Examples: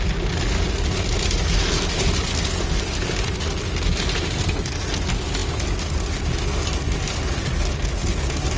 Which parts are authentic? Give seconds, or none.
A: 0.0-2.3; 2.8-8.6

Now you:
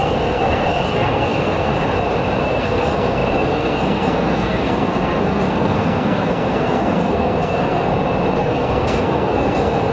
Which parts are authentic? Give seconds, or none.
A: 1.7-2.4; 7.9-8.4